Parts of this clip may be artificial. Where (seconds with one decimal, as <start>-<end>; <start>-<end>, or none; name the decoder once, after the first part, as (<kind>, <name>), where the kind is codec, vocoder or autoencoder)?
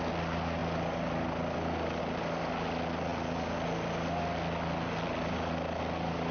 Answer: none